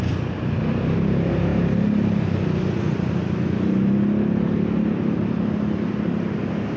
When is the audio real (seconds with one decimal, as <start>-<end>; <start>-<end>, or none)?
0.0-6.8